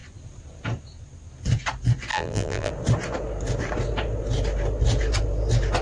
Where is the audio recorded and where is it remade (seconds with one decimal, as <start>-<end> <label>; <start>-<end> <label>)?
0.0-2.1 recorded; 2.1-2.7 remade; 2.7-5.8 recorded